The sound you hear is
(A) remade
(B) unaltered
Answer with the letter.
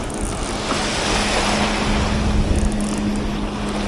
B